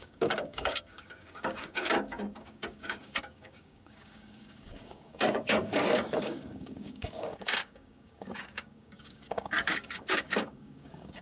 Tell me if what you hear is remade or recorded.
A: remade